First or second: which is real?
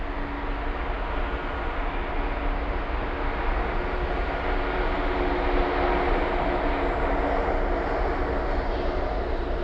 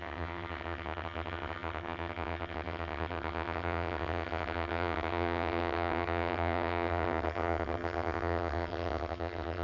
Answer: first